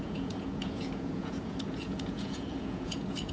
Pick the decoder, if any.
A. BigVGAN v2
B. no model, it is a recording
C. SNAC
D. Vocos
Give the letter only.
D